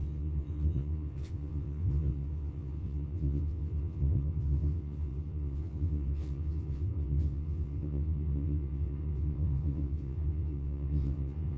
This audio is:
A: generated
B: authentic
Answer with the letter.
A